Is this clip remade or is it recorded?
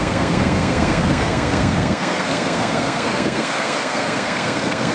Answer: remade